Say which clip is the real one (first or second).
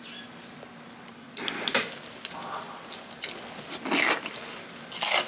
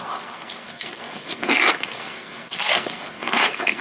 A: first